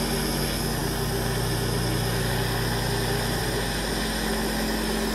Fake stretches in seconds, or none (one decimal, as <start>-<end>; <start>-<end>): none